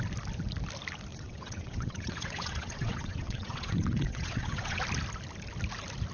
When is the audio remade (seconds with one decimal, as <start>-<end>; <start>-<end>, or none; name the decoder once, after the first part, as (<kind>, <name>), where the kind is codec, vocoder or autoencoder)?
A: 1.1-4.8 (vocoder, WaveNeXt)